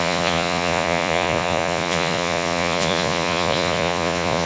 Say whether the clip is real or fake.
fake